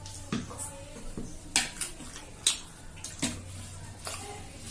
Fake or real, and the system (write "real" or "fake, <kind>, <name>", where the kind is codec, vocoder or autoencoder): real